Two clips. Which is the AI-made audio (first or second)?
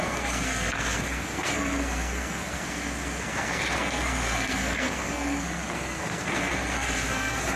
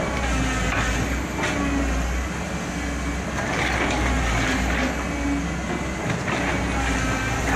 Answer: first